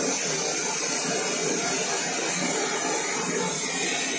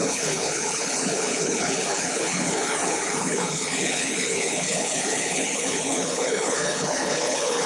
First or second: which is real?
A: first